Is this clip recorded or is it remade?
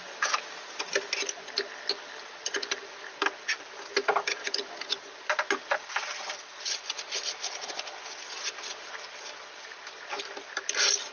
recorded